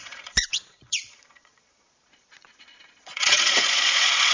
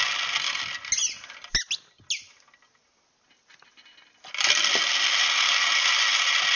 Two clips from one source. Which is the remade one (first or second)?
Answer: first